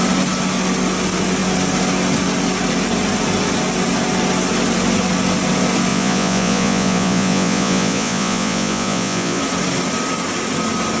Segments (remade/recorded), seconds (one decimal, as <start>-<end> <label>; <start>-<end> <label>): 0.0-5.9 recorded; 5.9-9.4 remade; 9.4-11.0 recorded